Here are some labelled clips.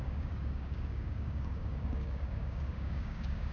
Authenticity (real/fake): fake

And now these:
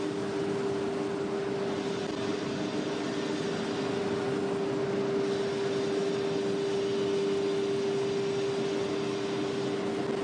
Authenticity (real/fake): real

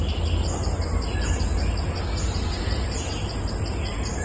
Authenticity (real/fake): real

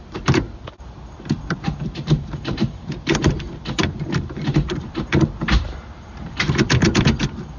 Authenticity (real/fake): fake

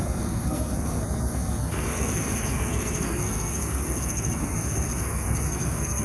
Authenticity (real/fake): fake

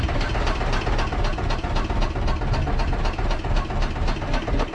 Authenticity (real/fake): real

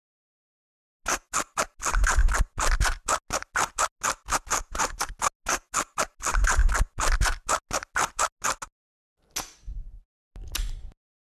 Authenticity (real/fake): real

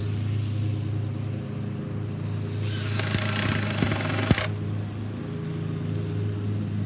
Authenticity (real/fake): real